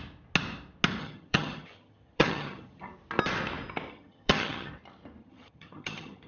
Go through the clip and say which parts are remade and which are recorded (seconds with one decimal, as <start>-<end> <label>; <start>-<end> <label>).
0.0-1.0 recorded; 1.0-2.9 remade; 2.9-3.9 recorded; 3.9-4.7 remade; 4.7-5.2 recorded; 5.2-6.3 remade